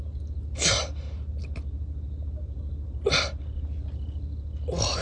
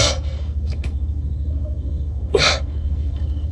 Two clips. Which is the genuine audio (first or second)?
first